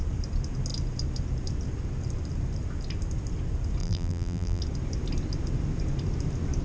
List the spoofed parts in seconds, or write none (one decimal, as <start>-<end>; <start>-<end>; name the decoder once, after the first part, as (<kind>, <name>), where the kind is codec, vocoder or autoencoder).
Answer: 3.8-4.6 (vocoder, BigVGAN v2)